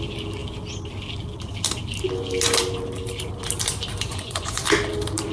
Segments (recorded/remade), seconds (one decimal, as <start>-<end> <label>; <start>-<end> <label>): 0.0-4.1 recorded; 4.1-4.6 remade; 4.6-5.3 recorded